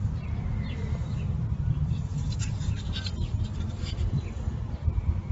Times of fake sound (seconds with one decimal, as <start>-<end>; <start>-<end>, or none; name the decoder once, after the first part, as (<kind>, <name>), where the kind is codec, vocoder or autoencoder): 0.0-2.1 (vocoder, BigVGAN v2); 3.8-5.3